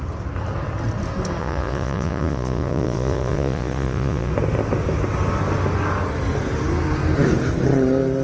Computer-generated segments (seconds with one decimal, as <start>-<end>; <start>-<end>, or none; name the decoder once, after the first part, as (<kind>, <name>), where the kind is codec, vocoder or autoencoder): 1.4-4.3 (vocoder, Vocos)